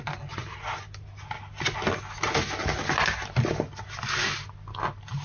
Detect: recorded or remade recorded